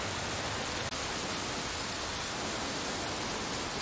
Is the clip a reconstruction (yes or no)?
no